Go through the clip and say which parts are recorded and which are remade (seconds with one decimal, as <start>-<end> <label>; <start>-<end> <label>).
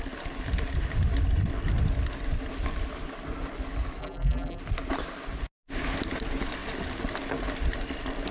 0.0-4.0 recorded; 4.0-4.6 remade; 4.6-8.3 recorded